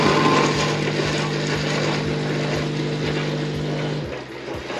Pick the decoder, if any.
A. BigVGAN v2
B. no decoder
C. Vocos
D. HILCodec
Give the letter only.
B